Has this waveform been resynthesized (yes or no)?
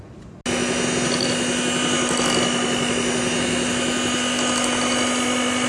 no